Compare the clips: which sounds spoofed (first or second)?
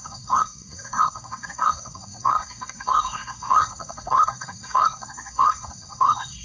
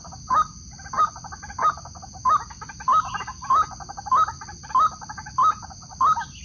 first